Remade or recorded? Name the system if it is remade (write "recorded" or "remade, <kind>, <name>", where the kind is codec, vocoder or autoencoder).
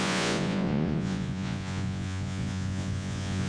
remade, vocoder, Vocos